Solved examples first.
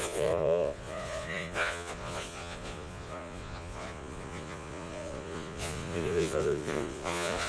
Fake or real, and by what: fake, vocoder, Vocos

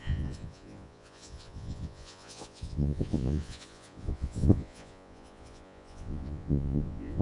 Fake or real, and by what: fake, vocoder, Vocos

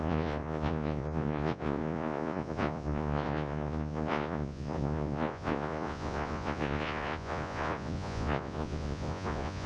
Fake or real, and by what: fake, vocoder, Vocos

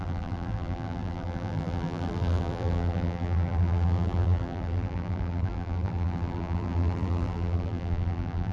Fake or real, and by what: fake, vocoder, BigVGAN v2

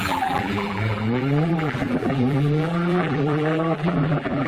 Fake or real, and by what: fake, vocoder, BigVGAN v2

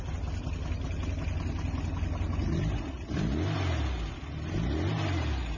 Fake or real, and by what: real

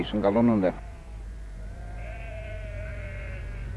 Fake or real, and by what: fake, vocoder, Vocos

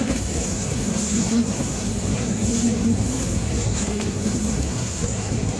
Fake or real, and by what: fake, codec, SNAC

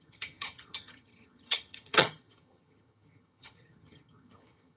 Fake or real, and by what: fake, vocoder, HiFi-GAN